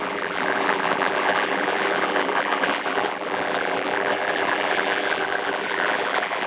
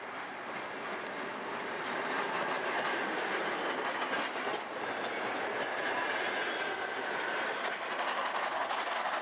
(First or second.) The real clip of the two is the second